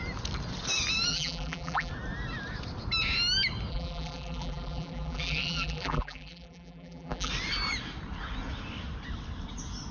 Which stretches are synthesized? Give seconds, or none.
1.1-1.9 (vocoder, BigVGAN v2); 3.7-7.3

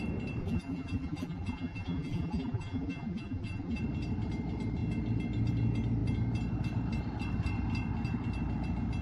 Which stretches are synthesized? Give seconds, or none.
0.4-3.8 (vocoder, BigVGAN v2)

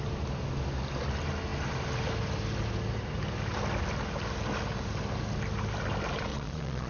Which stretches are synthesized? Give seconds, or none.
6.3-6.9 (vocoder, Vocos)

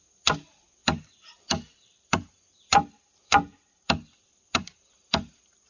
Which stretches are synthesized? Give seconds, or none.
0.8-4.2 (vocoder, BigVGAN v2)

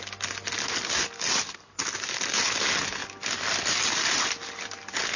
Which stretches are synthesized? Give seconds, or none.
none

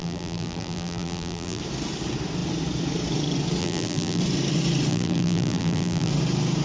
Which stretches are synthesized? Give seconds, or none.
0.0-1.6 (vocoder, BigVGAN v2); 3.6-4.2; 4.9-6.1